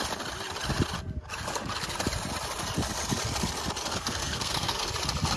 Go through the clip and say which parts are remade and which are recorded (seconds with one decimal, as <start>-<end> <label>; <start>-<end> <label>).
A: 0.0-3.9 recorded; 3.9-4.9 remade; 4.9-5.4 recorded